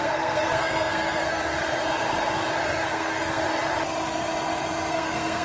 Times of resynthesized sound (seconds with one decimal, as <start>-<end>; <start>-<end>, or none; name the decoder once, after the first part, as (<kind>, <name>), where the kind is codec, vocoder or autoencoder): 0.0-1.4 (codec, SNAC); 2.8-3.4; 4.9-5.4